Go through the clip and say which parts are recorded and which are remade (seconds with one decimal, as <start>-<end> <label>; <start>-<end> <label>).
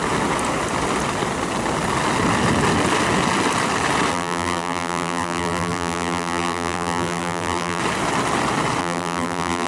0.0-4.1 recorded; 4.1-7.8 remade; 7.8-8.8 recorded; 8.8-9.7 remade